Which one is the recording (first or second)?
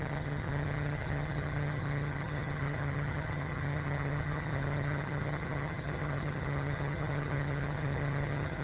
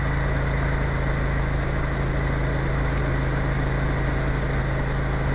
second